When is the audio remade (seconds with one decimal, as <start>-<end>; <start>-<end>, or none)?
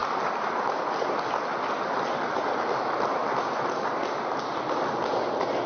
none